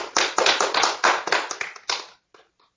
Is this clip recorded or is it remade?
recorded